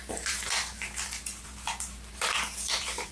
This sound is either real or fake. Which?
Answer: fake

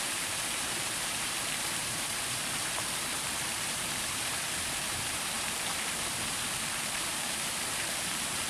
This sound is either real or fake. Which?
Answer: fake